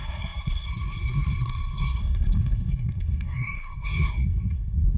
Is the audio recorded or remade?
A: remade